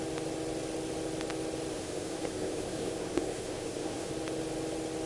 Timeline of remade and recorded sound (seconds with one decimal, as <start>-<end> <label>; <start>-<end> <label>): 0.0-1.7 recorded; 1.7-4.1 remade; 4.1-5.1 recorded